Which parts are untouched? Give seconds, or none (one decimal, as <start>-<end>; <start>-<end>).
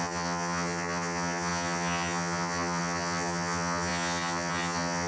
none